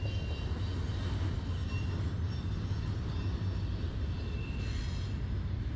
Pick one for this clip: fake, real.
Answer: real